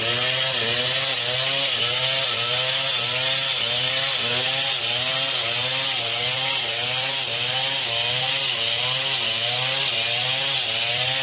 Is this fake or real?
real